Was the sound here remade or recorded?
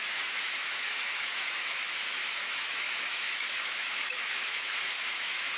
remade